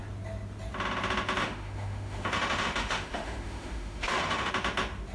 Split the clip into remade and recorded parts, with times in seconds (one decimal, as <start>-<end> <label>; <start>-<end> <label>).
0.0-1.4 recorded; 1.4-4.5 remade; 4.5-5.1 recorded